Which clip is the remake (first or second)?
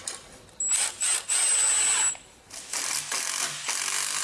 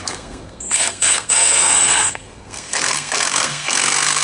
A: second